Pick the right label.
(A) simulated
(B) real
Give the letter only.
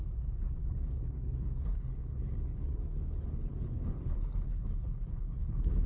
A